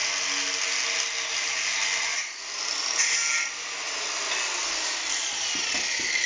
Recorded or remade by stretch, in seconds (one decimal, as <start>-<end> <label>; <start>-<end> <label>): 0.0-6.3 recorded